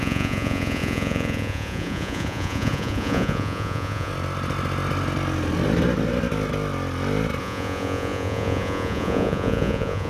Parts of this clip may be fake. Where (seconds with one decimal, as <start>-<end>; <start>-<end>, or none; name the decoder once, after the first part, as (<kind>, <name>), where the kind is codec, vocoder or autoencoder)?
0.0-4.1 (vocoder, Vocos); 7.4-10.1